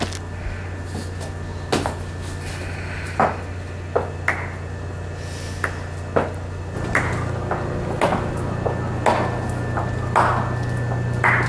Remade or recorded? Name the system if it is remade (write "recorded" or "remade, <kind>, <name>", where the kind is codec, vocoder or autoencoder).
recorded